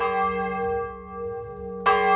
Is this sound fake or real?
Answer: real